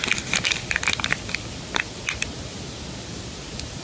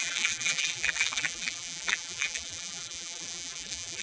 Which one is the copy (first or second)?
second